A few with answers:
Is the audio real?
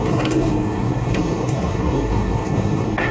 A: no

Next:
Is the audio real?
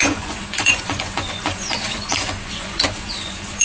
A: no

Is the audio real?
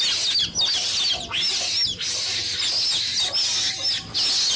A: yes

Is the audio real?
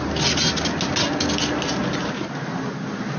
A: yes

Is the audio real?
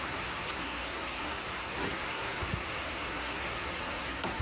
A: no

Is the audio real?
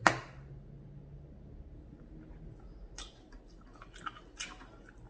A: yes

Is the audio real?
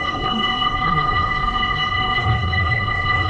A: no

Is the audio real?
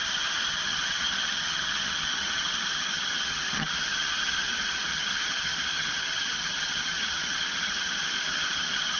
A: no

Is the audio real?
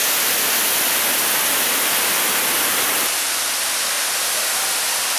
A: yes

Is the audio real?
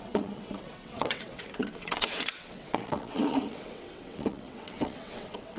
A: no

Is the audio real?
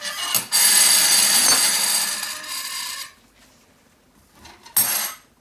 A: yes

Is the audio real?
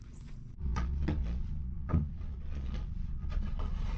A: no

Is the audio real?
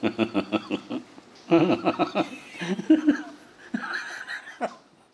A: yes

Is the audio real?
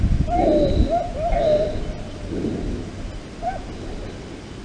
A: yes